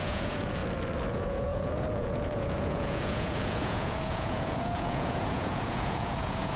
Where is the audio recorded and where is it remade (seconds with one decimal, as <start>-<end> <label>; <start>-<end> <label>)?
0.0-0.6 remade; 0.6-1.1 recorded; 1.1-6.6 remade

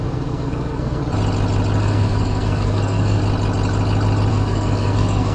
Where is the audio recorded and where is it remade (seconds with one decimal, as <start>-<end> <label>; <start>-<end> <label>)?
0.0-1.0 remade; 1.0-1.8 recorded; 1.8-3.2 remade; 3.2-4.3 recorded; 4.3-5.3 remade